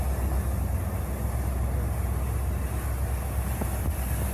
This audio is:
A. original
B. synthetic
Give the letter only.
A